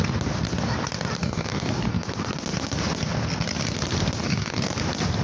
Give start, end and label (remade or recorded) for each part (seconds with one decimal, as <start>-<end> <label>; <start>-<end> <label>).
0.0-1.2 recorded; 1.2-1.9 remade; 1.9-4.2 recorded; 4.2-4.7 remade; 4.7-5.2 recorded